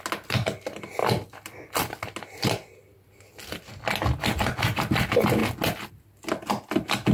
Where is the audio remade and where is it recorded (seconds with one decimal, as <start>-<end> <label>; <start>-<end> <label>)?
0.0-7.1 recorded